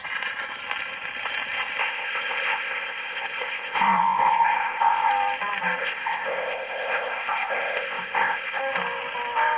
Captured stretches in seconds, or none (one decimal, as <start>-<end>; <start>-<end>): 0.0-1.8; 5.1-5.8; 8.6-9.6